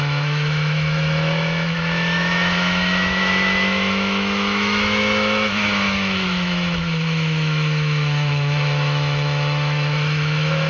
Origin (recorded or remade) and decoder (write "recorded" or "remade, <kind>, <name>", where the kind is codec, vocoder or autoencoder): remade, autoencoder, DAC-VAE